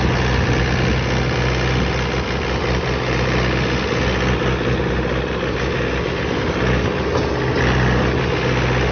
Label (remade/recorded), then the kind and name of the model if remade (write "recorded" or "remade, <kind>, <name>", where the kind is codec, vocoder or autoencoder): recorded